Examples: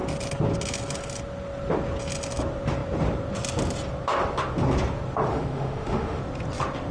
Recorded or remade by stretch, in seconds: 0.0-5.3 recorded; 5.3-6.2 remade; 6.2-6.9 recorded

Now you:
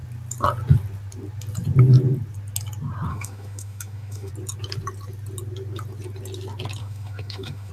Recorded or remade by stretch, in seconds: 0.0-3.1 recorded; 3.1-4.3 remade; 4.3-6.8 recorded; 6.8-7.7 remade

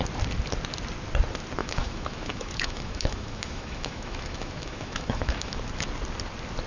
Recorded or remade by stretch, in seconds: 0.0-1.6 recorded; 1.6-5.6 remade; 5.6-6.7 recorded

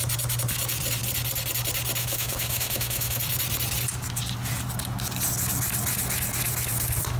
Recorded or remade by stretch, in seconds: 0.0-2.0 recorded; 2.0-3.2 remade; 3.2-7.2 recorded